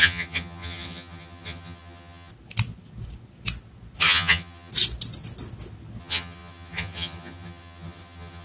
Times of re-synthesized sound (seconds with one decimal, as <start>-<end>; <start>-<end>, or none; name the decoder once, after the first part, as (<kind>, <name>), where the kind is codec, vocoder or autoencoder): 0.0-2.3 (vocoder, HiFi-GAN); 4.0-4.7; 6.0-8.4